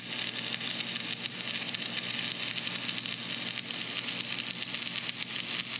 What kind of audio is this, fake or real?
real